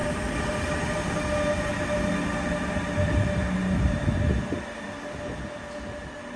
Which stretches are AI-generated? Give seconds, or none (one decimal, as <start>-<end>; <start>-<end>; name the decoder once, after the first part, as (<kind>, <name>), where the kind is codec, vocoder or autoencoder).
none